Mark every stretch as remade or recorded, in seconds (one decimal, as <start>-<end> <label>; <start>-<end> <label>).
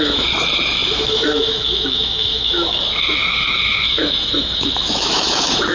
0.0-5.7 remade